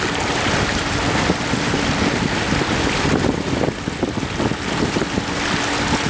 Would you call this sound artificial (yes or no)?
no